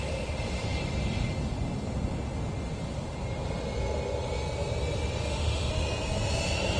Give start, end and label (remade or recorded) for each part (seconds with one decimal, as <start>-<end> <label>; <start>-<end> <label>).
0.0-5.2 recorded; 5.2-5.7 remade; 5.7-6.8 recorded